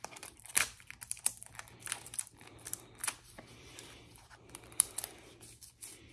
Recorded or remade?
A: remade